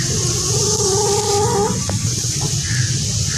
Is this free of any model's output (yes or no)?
yes